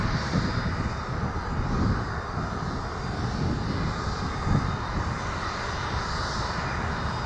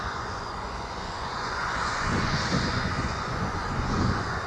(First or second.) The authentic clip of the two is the first